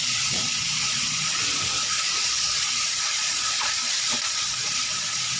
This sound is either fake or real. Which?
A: fake